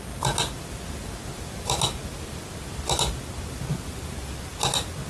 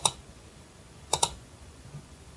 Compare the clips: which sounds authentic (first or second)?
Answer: first